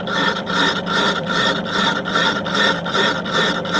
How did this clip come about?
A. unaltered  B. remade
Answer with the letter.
B